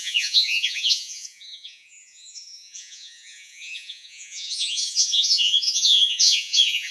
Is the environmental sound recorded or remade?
remade